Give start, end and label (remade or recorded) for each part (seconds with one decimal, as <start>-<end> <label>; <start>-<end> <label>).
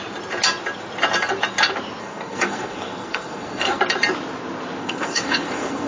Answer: 0.0-2.0 recorded; 2.0-3.8 remade; 3.8-4.8 recorded; 4.8-5.9 remade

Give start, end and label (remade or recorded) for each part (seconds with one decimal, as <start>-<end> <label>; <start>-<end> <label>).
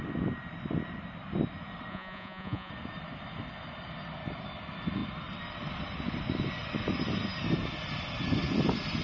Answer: 0.0-1.9 recorded; 1.9-2.7 remade; 2.7-9.0 recorded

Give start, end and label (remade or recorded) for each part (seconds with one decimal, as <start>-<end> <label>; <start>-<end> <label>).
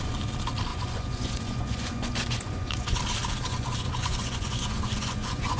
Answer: 0.0-0.7 recorded; 0.7-3.0 remade; 3.0-3.5 recorded; 3.5-5.6 remade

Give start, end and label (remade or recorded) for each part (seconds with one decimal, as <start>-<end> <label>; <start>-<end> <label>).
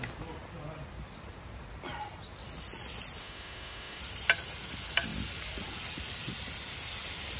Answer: 0.0-3.2 recorded; 3.2-4.0 remade; 4.0-7.4 recorded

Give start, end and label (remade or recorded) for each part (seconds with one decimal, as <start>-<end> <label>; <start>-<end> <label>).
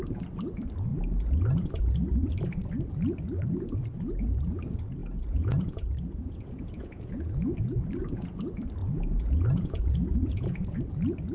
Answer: 0.0-5.0 recorded; 5.0-8.4 remade; 8.4-8.8 recorded; 8.8-10.8 remade; 10.8-11.3 recorded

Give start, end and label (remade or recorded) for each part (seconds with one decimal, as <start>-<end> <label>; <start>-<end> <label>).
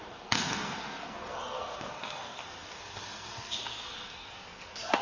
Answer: 0.0-5.0 remade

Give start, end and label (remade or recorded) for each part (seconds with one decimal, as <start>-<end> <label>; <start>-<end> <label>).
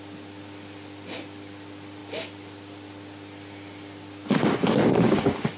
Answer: 0.0-5.6 recorded